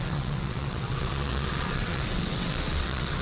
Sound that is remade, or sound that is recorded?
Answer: remade